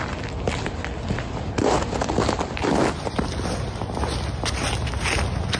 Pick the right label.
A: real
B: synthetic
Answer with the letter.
A